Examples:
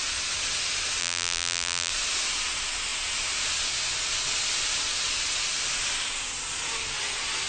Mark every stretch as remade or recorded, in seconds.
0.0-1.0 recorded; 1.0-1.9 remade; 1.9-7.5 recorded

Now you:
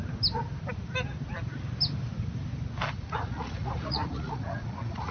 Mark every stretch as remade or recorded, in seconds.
0.0-2.9 recorded; 2.9-5.1 remade

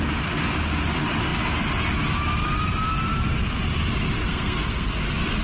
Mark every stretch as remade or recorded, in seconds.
0.0-4.2 recorded; 4.2-4.9 remade; 4.9-5.4 recorded